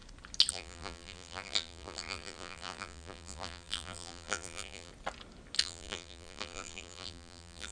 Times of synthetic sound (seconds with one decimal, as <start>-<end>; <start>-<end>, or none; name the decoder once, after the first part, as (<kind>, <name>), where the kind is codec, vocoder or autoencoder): 0.5-4.9 (vocoder, BigVGAN v2); 5.6-7.7